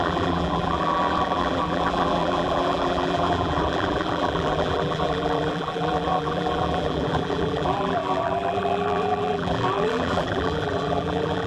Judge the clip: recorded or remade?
remade